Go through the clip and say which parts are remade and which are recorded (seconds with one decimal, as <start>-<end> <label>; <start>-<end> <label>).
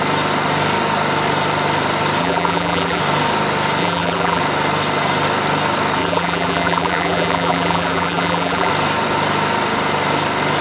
0.0-2.2 recorded; 2.2-3.0 remade; 3.0-3.8 recorded; 3.8-4.4 remade; 4.4-6.0 recorded; 6.0-8.7 remade; 8.7-10.6 recorded